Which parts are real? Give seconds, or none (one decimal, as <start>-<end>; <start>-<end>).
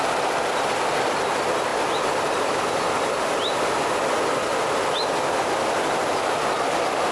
0.0-7.1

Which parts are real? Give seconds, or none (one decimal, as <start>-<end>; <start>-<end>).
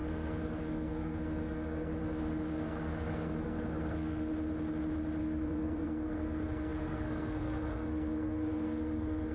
4.3-5.2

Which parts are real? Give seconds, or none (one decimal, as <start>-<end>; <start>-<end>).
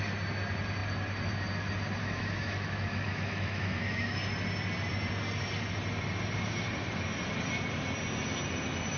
0.0-2.0; 4.2-9.0